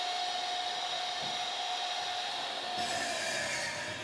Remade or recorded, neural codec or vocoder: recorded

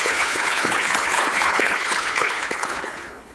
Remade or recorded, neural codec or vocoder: remade, codec, HILCodec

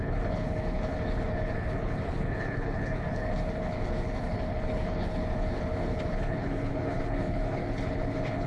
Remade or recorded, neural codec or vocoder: remade, codec, HILCodec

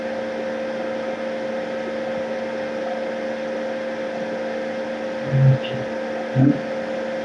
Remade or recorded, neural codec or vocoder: recorded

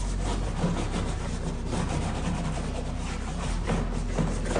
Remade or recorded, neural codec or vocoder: recorded